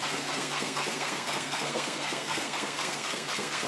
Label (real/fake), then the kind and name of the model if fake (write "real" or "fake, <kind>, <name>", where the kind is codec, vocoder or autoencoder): fake, codec, SNAC